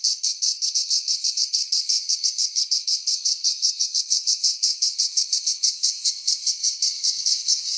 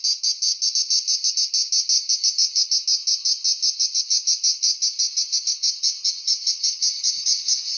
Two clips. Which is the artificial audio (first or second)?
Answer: first